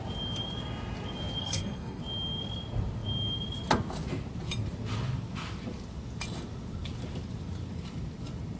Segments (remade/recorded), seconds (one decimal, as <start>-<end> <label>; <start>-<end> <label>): 0.0-1.4 recorded; 1.4-2.0 remade; 2.0-8.6 recorded